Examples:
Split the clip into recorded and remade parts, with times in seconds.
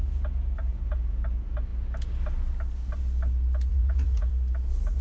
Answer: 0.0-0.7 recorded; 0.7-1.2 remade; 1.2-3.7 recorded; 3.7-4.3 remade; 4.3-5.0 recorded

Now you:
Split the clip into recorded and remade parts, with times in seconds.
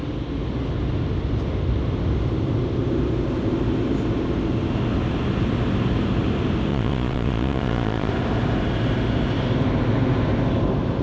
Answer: 0.0-6.7 recorded; 6.7-8.1 remade; 8.1-11.0 recorded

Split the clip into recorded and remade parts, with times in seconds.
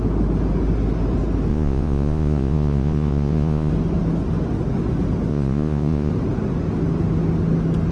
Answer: 0.0-1.5 recorded; 1.5-3.7 remade; 3.7-5.3 recorded; 5.3-6.1 remade; 6.1-7.9 recorded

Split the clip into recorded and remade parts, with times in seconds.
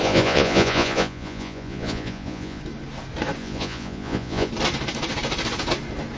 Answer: 0.0-2.6 remade; 2.6-3.4 recorded; 3.4-4.5 remade; 4.5-6.2 recorded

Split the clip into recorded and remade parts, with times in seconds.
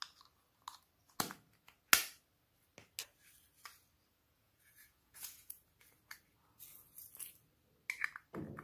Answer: 0.0-4.1 recorded; 4.1-5.6 remade; 5.6-8.6 recorded